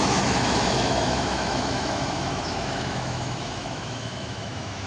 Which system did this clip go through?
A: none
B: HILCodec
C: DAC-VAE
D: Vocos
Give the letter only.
C